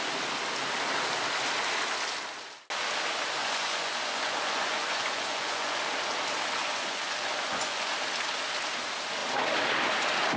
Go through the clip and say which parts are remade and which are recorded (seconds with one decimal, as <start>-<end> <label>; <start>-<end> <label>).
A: 0.0-3.4 recorded; 3.4-5.8 remade; 5.8-6.6 recorded; 6.6-7.9 remade; 7.9-10.4 recorded